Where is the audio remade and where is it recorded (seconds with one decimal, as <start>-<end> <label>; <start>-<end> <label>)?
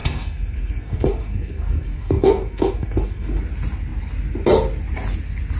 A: 0.0-3.4 remade; 3.4-5.6 recorded